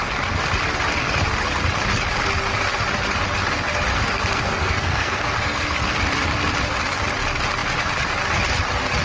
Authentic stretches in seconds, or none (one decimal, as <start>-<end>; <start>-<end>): 0.0-3.9; 6.0-9.0